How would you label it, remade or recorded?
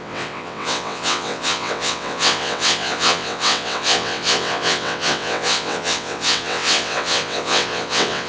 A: remade